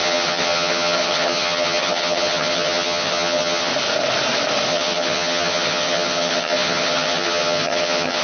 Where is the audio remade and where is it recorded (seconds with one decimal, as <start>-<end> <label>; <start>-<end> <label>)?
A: 0.0-3.7 remade; 3.7-4.7 recorded; 4.7-8.2 remade